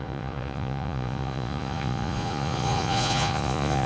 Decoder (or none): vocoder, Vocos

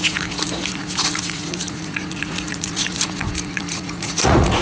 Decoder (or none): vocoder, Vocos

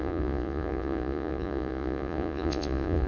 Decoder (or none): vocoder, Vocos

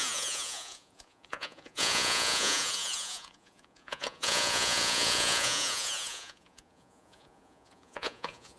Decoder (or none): vocoder, Vocos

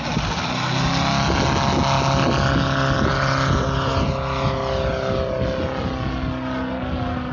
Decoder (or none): none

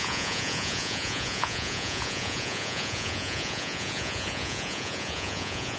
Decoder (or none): vocoder, Vocos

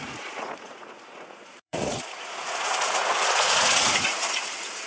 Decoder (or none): vocoder, Vocos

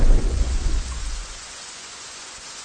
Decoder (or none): vocoder, Vocos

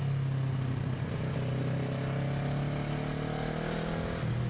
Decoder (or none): none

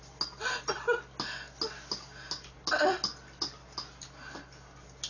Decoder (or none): none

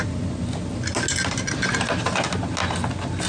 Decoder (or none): none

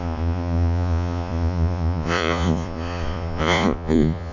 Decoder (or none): vocoder, Vocos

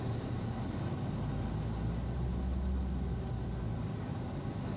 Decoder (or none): none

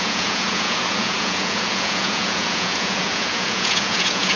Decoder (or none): vocoder, Vocos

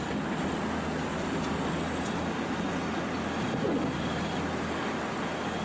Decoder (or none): none